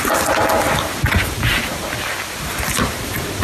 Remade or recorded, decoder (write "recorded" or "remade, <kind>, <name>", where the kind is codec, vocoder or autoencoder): recorded